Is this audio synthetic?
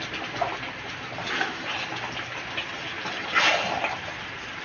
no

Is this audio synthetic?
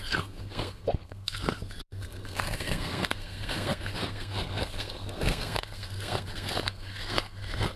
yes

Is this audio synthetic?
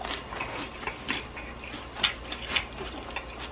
no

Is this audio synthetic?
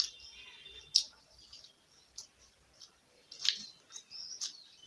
no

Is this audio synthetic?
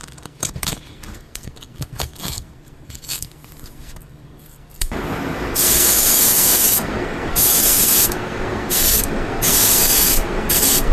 yes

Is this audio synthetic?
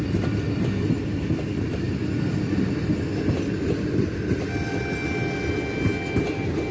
no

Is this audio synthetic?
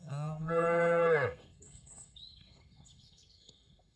yes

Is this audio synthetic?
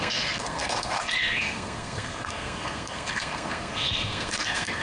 yes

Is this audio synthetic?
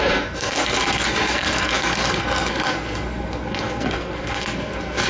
yes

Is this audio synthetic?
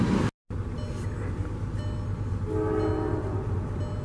no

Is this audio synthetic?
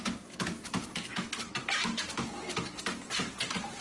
no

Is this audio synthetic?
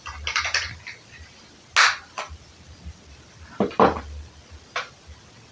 no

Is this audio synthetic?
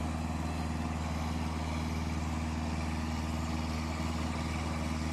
no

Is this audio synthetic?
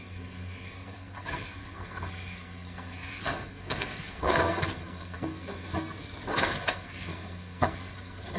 yes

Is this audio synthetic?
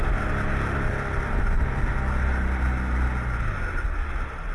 no